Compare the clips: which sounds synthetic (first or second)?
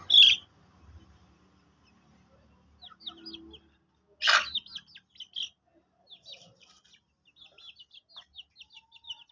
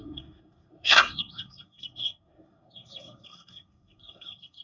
second